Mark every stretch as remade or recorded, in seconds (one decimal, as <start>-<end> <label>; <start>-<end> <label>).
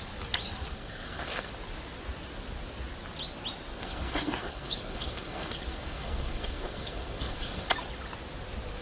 0.0-0.7 recorded; 0.7-1.5 remade; 1.5-3.7 recorded; 3.7-7.7 remade; 7.7-8.8 recorded